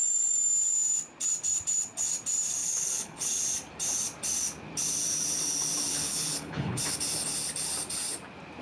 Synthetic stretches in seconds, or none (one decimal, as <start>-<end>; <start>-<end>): 2.6-3.3; 5.9-6.8

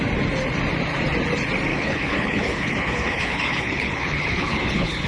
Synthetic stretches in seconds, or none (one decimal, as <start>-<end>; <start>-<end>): 1.7-5.1

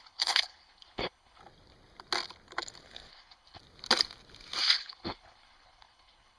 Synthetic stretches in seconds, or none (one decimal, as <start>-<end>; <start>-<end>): 0.0-1.4; 3.1-3.6; 4.6-6.4

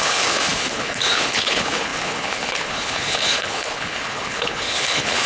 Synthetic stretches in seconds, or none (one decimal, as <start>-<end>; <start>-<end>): 0.0-5.3

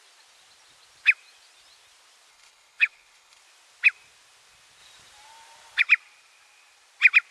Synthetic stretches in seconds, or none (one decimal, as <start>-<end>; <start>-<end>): 2.3-3.4